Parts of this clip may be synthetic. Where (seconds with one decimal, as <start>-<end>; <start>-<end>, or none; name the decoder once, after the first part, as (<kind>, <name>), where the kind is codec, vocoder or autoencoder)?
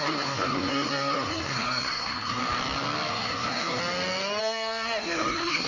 0.0-2.4 (codec, SNAC); 3.1-3.8; 4.4-5.7